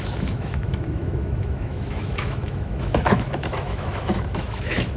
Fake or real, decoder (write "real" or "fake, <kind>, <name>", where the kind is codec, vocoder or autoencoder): fake, autoencoder, DAC-VAE